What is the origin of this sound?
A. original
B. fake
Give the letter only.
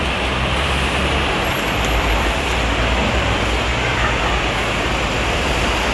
B